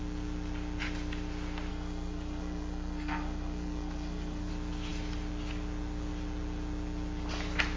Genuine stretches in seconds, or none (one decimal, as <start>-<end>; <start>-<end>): 0.0-1.7; 4.5-7.8